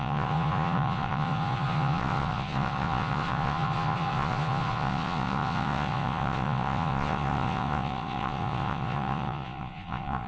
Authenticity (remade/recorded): remade